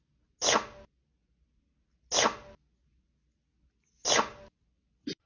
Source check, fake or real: real